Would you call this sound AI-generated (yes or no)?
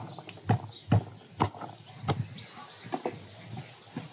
no